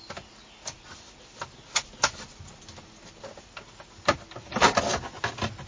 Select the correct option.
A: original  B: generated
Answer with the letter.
A